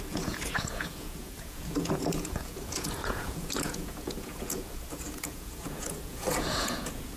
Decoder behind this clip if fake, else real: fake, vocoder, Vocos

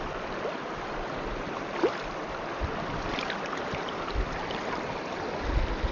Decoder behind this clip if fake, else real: real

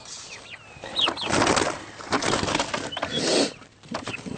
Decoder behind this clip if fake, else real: real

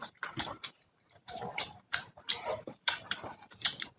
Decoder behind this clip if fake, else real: fake, vocoder, BigVGAN v2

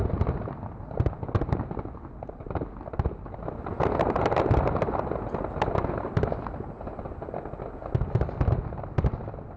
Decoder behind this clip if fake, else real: real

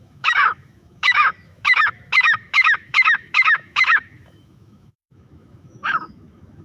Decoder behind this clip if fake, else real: fake, autoencoder, DAC-VAE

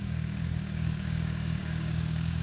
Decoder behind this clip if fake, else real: fake, codec, DAC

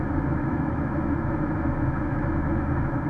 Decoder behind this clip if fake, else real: fake, autoencoder, DAC-VAE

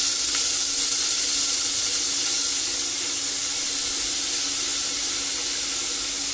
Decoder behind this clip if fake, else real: real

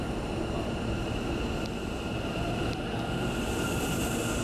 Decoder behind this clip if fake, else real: real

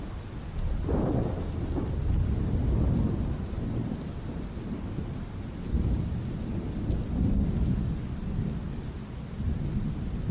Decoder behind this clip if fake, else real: real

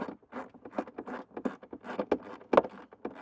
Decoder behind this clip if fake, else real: real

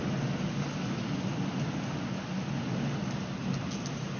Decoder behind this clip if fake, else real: real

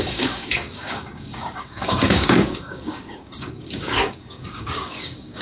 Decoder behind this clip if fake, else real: fake, codec, DAC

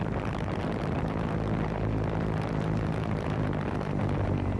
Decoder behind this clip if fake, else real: fake, vocoder, BigVGAN v2